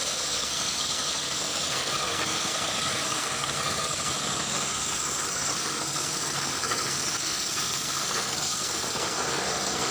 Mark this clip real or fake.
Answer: fake